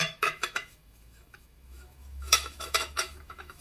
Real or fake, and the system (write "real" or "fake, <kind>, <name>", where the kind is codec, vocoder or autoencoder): fake, autoencoder, DAC-VAE